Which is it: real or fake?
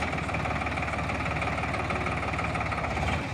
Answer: real